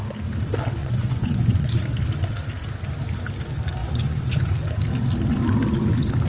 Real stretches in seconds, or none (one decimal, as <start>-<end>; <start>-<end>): 0.0-0.8; 1.9-3.8; 4.5-6.3